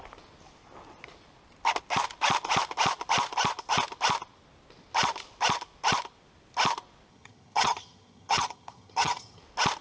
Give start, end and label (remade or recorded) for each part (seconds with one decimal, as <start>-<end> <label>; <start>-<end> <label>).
0.0-7.1 recorded; 7.1-9.4 remade; 9.4-9.8 recorded